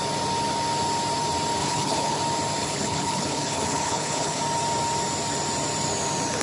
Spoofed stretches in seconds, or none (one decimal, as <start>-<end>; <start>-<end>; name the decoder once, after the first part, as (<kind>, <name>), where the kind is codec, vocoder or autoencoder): 1.6-2.2 (codec, HILCodec); 2.6-4.4